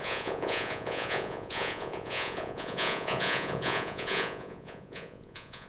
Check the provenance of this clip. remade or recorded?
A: remade